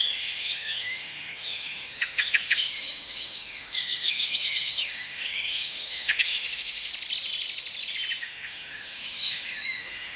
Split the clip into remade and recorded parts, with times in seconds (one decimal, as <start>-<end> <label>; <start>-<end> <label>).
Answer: 0.0-6.9 remade; 6.9-8.2 recorded; 8.2-10.2 remade